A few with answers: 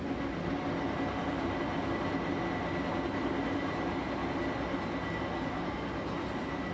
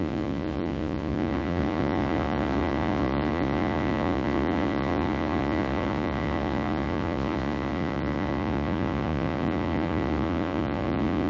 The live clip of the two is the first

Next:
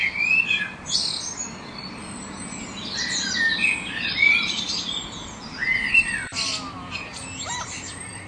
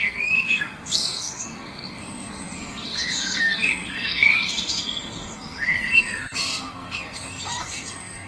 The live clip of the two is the first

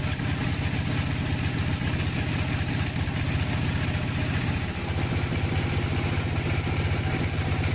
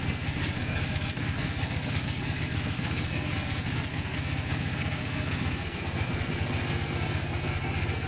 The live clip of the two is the first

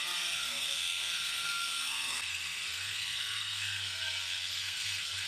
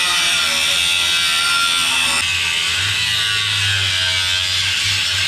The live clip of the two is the second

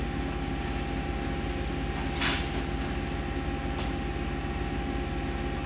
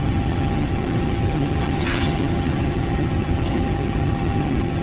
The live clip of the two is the first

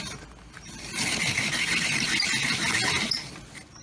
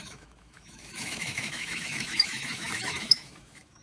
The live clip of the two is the first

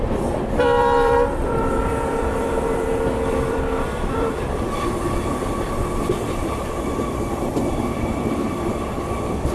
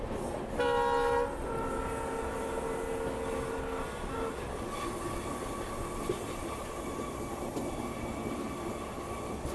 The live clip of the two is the second